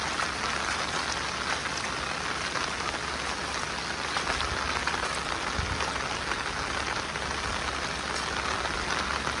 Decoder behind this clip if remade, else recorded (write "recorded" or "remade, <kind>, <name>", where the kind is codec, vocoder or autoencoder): recorded